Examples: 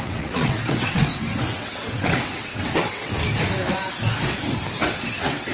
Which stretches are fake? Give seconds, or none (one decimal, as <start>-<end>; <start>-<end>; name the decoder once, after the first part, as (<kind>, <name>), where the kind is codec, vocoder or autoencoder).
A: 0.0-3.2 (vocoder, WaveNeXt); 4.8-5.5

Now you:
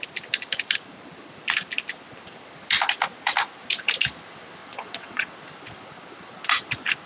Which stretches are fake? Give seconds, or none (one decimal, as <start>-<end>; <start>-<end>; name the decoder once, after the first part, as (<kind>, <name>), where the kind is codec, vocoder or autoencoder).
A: 4.6-5.3 (vocoder, WaveNeXt)

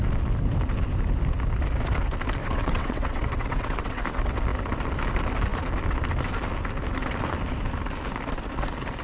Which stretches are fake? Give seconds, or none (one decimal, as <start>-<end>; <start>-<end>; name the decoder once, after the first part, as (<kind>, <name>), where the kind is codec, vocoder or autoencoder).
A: 2.4-4.0 (vocoder, WaveNeXt)